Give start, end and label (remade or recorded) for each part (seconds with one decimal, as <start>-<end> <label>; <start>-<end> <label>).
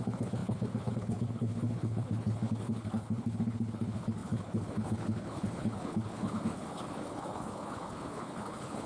0.0-8.9 remade